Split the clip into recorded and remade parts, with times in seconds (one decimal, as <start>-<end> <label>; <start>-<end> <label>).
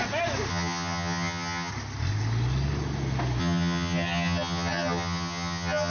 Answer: 0.0-0.5 recorded; 0.5-1.7 remade; 1.7-3.4 recorded; 3.4-5.9 remade